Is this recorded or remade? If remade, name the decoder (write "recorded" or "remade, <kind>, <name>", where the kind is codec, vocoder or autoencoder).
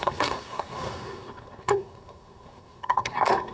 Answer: remade, codec, SNAC